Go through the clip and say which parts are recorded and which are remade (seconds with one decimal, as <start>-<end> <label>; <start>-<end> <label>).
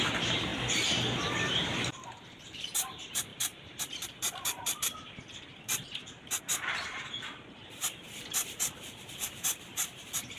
0.0-0.5 remade; 0.5-1.4 recorded; 1.4-10.4 remade